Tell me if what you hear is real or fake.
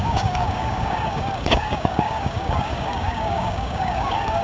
fake